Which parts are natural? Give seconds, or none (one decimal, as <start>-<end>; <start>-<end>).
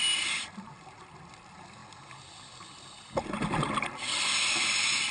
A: 0.0-5.1